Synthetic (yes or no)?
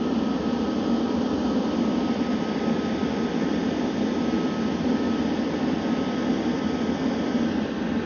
no